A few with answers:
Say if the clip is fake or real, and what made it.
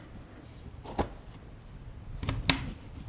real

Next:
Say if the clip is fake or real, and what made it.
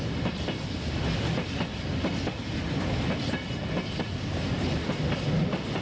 real